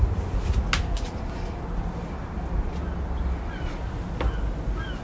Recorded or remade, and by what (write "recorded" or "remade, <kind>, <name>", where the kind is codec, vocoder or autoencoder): recorded